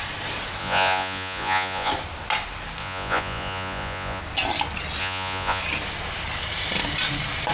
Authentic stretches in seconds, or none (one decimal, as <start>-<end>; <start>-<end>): 0.0-0.6; 1.9-2.8; 4.2-5.0; 5.6-7.5